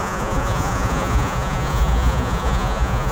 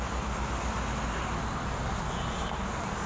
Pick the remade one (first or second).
first